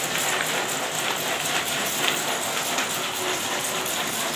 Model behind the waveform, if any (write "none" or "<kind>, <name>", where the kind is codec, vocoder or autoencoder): none